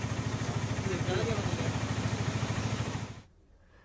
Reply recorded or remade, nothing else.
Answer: recorded